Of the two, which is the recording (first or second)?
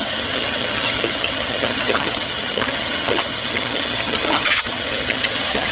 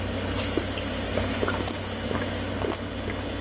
second